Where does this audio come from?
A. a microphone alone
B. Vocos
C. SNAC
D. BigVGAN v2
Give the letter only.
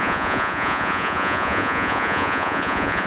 B